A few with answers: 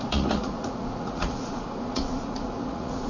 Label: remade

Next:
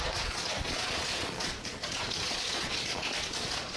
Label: remade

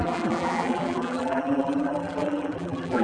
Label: remade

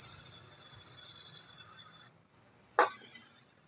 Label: recorded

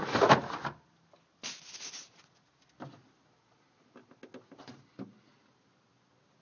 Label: recorded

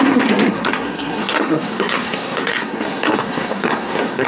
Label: remade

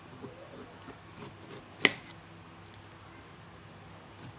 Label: recorded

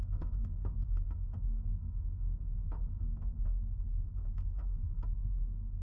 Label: remade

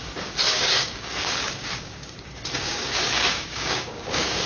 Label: remade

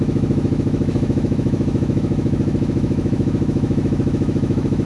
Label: remade